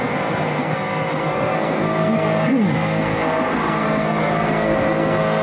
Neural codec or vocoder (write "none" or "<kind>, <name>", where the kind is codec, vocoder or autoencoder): codec, SNAC